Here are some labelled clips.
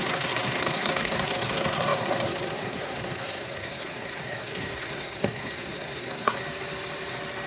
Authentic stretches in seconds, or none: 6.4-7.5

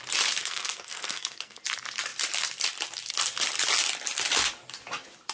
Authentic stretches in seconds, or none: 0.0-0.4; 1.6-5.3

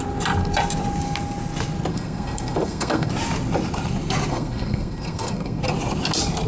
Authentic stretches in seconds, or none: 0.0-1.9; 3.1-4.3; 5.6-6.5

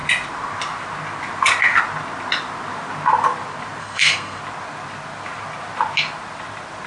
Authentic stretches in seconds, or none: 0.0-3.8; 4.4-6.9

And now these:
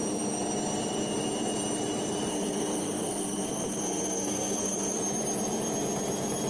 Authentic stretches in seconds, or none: 0.0-2.3; 5.0-6.5

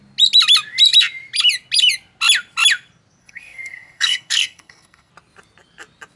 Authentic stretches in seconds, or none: 0.0-3.2; 5.1-6.2